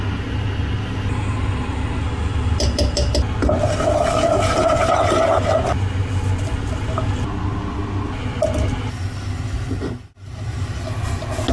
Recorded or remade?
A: recorded